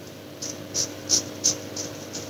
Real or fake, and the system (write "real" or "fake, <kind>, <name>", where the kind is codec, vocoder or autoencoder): real